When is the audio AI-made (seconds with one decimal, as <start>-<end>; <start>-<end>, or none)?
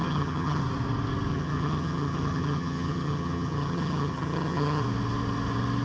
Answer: 0.0-0.6; 1.3-4.8